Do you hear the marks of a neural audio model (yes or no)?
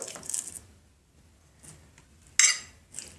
no